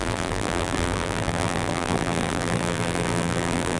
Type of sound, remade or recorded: remade